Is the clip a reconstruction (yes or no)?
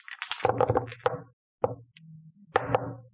no